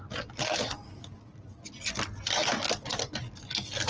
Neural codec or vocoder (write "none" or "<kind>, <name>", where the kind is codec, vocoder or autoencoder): none